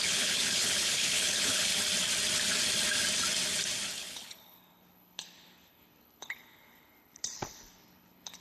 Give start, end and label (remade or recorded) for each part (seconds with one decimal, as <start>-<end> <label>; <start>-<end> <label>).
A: 0.0-1.7 remade; 1.7-3.9 recorded; 3.9-8.4 remade

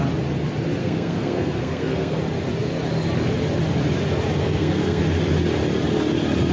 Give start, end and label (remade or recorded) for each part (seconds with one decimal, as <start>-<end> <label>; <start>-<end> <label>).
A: 0.0-0.8 recorded; 0.8-2.2 remade; 2.2-4.4 recorded; 4.4-5.0 remade; 5.0-6.5 recorded

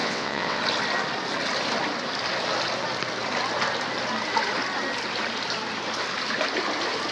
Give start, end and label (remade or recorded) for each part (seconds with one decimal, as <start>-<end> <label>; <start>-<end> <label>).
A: 0.0-0.6 remade; 0.6-7.1 recorded

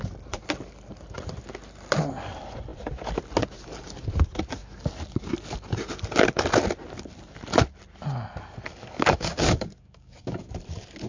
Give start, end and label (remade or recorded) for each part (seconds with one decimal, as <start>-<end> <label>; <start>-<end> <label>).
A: 0.0-8.7 recorded; 8.7-10.5 remade; 10.5-11.1 recorded

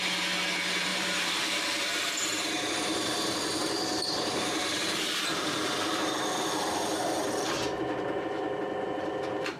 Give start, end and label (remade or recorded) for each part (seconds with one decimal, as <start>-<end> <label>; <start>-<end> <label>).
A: 0.0-0.9 recorded; 0.9-5.9 remade; 5.9-9.6 recorded

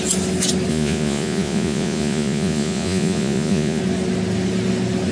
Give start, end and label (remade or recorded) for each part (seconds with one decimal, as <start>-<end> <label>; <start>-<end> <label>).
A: 0.0-0.7 recorded; 0.7-3.8 remade; 3.8-5.1 recorded